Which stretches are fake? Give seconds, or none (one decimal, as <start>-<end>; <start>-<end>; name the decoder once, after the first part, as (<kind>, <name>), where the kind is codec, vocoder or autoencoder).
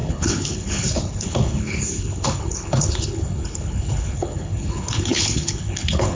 0.0-6.1 (codec, HILCodec)